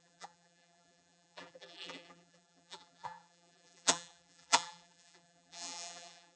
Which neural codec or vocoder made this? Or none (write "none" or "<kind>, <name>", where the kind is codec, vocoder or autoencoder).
vocoder, BigVGAN v2